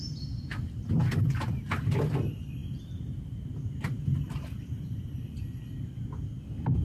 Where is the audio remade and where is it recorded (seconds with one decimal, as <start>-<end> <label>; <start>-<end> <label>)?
0.0-2.6 recorded; 2.6-5.4 remade; 5.4-6.8 recorded